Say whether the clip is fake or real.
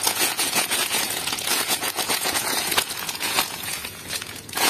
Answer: fake